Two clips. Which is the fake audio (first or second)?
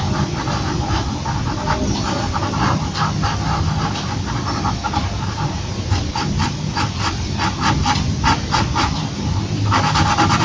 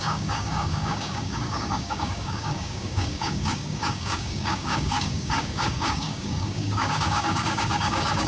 second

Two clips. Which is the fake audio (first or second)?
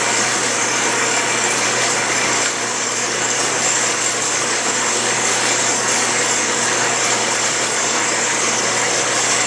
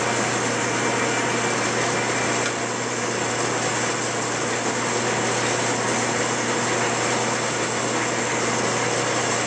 first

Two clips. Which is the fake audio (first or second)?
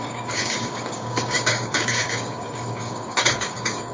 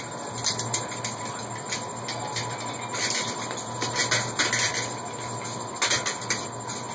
first